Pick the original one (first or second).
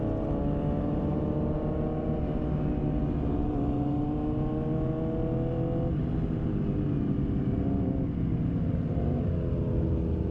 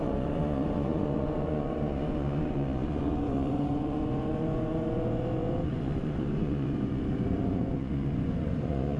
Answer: first